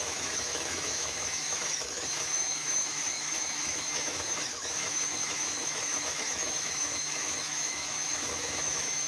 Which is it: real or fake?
fake